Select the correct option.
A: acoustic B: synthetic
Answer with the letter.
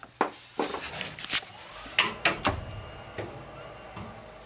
A